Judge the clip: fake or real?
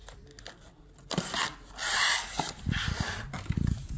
real